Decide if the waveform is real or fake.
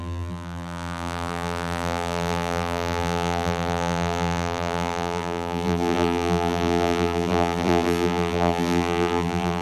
fake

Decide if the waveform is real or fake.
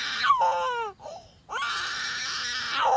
real